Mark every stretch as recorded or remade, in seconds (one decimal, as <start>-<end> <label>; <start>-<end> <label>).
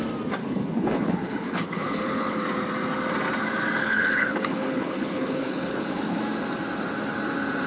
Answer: 0.0-0.4 recorded; 0.4-2.4 remade; 2.4-3.8 recorded; 3.8-6.2 remade; 6.2-7.7 recorded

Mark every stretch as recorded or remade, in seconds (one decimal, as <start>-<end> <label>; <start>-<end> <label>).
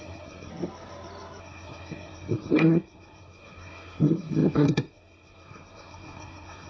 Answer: 0.0-0.5 remade; 0.5-1.4 recorded; 1.4-6.7 remade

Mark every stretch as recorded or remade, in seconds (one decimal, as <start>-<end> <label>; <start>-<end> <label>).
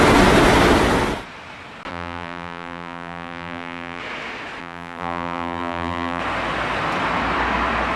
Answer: 0.0-1.9 recorded; 1.9-4.0 remade; 4.0-4.6 recorded; 4.6-6.2 remade; 6.2-8.0 recorded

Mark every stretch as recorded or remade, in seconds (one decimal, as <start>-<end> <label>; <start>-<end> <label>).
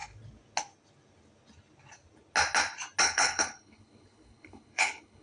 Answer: 0.0-3.0 recorded; 3.0-5.2 remade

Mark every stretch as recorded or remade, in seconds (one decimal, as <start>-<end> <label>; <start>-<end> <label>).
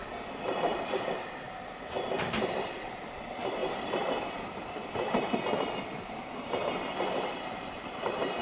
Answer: 0.0-3.6 recorded; 3.6-7.5 remade; 7.5-8.4 recorded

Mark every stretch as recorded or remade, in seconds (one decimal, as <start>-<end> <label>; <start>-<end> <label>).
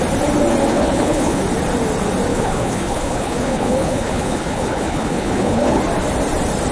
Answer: 0.0-0.7 recorded; 0.7-1.4 remade; 1.4-2.3 recorded; 2.3-5.8 remade; 5.8-6.7 recorded